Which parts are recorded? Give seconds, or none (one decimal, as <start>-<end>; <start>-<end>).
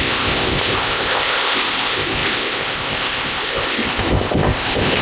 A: none